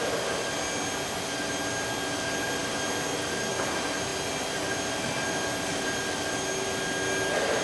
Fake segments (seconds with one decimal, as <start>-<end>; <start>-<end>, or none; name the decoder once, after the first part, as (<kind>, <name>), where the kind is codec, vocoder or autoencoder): none